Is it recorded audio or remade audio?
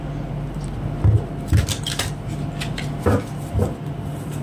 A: recorded